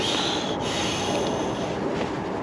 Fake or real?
real